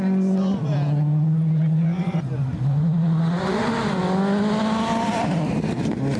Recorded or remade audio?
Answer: recorded